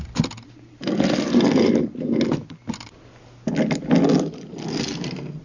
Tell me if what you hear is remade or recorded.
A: recorded